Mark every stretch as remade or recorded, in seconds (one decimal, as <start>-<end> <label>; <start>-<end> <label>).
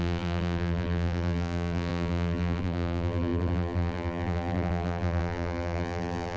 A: 0.0-6.4 remade